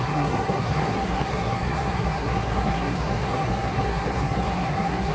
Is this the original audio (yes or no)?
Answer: no